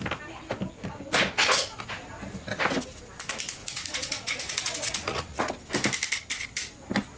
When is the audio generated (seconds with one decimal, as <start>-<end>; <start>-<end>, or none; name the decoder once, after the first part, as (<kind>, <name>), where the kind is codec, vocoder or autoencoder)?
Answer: 3.6-5.5 (vocoder, Vocos)